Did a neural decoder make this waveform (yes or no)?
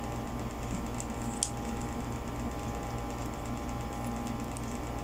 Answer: no